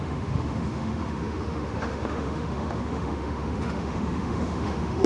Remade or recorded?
remade